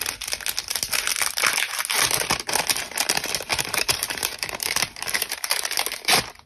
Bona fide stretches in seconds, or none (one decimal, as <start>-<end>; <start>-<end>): 0.0-3.5; 5.7-6.5